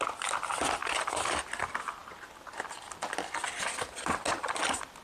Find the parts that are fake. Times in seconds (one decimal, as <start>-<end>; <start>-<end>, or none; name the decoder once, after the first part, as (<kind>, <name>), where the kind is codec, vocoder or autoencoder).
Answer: none